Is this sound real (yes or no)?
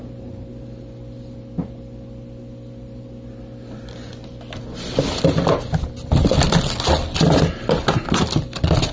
yes